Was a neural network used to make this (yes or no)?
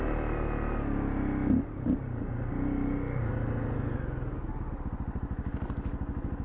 no